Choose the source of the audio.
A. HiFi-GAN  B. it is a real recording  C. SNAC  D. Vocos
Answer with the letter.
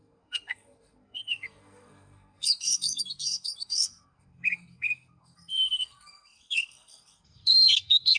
C